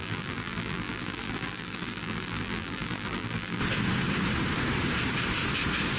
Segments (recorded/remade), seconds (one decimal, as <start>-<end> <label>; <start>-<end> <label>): 0.0-3.6 remade; 3.6-6.0 recorded